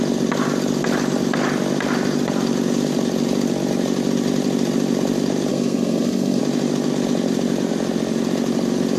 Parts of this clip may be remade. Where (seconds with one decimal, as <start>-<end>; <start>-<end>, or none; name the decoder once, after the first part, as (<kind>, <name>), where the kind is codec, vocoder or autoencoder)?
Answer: 5.5-6.4 (codec, SNAC)